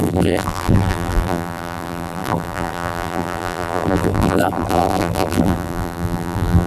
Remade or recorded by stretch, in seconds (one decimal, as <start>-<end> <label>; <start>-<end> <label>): 0.0-6.7 remade